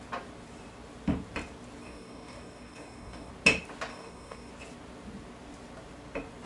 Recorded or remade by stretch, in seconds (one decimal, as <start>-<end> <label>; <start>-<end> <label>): 0.0-1.8 recorded; 1.8-3.3 remade; 3.3-3.9 recorded; 3.9-4.5 remade; 4.5-6.5 recorded